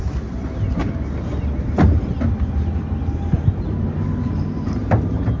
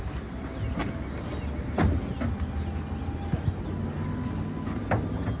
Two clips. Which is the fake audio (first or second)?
first